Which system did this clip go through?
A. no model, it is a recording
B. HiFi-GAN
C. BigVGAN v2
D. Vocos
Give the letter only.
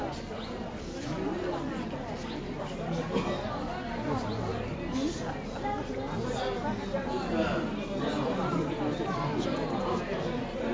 A